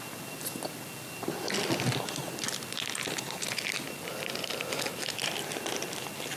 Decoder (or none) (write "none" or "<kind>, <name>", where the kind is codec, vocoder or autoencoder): none